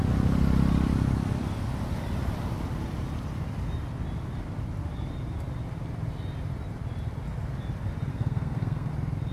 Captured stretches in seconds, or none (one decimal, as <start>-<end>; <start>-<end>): 0.0-8.1; 8.9-9.3